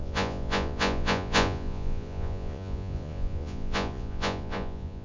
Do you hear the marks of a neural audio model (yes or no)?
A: yes